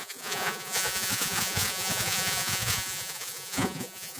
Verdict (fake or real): fake